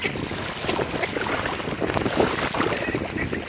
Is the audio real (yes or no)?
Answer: yes